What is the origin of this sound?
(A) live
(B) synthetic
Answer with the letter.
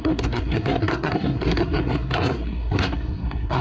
B